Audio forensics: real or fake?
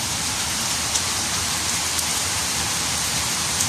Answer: fake